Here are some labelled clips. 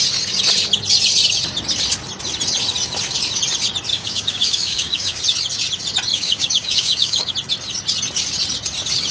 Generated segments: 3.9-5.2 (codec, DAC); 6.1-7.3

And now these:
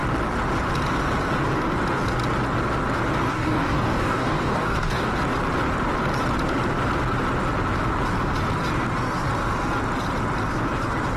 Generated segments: 3.3-5.1 (codec, DAC)

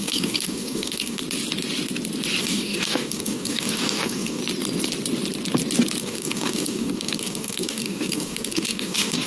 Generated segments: 0.0-1.2 (codec, DAC); 2.4-4.4; 6.0-9.3

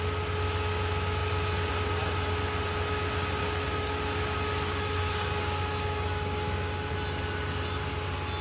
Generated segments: 3.4-6.9 (codec, DAC)

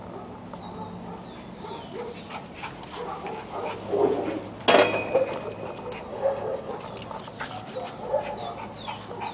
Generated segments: 6.1-6.7 (codec, DAC)

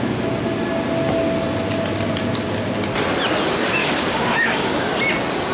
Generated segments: 3.8-5.0 (codec, DAC)

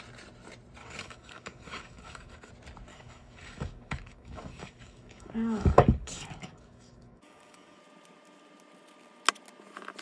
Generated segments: 0.8-2.5 (codec, DAC); 2.9-7.8